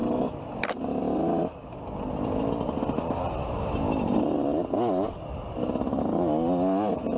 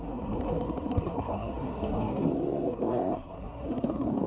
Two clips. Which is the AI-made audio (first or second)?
second